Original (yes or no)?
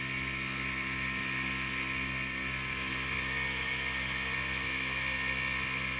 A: yes